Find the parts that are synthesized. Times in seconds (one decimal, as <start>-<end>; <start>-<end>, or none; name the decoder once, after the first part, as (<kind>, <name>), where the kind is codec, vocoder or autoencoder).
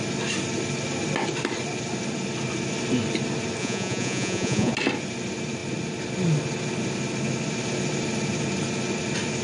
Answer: 3.6-4.7 (vocoder, Vocos)